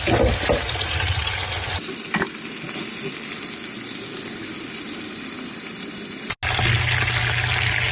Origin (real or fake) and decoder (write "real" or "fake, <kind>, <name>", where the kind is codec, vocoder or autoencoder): real